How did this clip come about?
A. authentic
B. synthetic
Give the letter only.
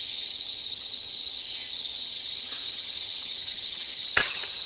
B